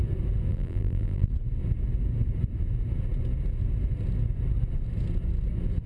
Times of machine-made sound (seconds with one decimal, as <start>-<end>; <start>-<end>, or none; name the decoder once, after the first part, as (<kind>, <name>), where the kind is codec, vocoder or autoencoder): 0.5-1.3 (vocoder, BigVGAN v2)